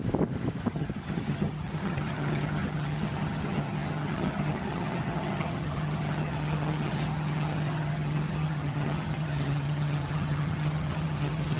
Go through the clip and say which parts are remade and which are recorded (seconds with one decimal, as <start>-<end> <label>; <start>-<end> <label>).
0.0-0.7 recorded; 0.7-11.6 remade